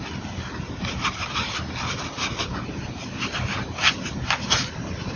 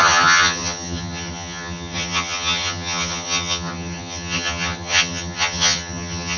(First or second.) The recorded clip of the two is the first